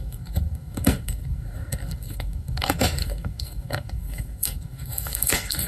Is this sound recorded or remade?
remade